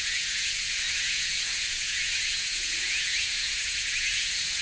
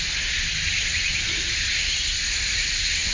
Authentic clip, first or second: second